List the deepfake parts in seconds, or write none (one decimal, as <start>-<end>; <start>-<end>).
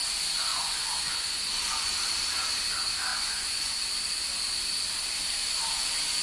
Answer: 0.5-1.9; 3.1-3.8